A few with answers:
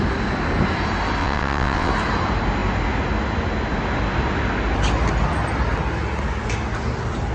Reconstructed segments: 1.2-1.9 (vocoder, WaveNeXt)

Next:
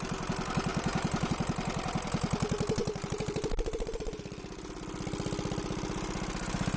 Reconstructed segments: 0.7-1.3 (vocoder, BigVGAN v2); 2.8-4.7

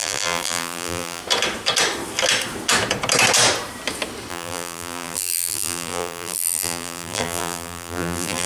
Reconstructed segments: 0.0-1.2 (vocoder, BigVGAN v2); 4.3-8.5

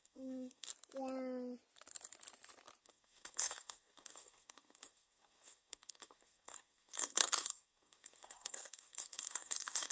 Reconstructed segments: 0.0-0.7 (codec, SNAC); 2.8-9.9

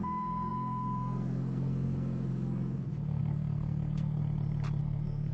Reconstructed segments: 0.0-4.2 (codec, SNAC); 4.8-5.3